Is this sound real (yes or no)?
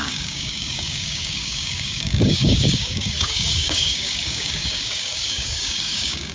no